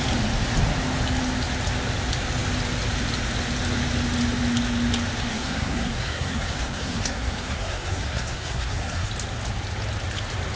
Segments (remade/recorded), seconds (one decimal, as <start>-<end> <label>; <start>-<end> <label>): 0.0-5.3 recorded; 5.3-9.1 remade; 9.1-10.6 recorded